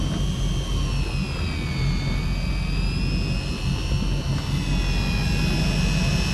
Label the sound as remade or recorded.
recorded